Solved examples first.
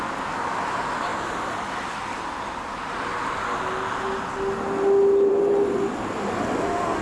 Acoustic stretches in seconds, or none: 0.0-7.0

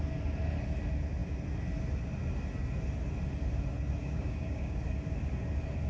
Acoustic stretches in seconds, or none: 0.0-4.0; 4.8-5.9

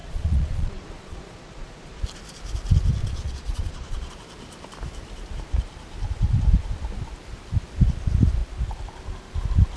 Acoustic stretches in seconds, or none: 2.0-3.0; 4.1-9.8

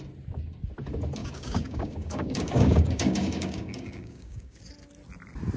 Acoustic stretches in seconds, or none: 0.0-1.2; 4.6-5.6

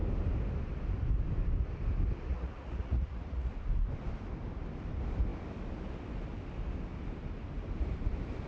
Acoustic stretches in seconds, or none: 0.0-2.3; 3.5-8.5

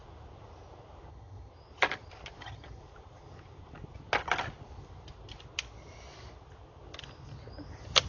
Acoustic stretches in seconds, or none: 0.0-1.1; 1.5-2.4; 2.8-8.1

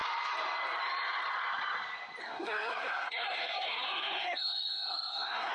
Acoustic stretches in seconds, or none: 0.0-2.2

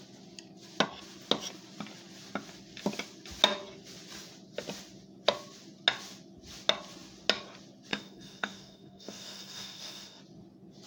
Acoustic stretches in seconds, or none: 0.0-7.9; 10.2-10.9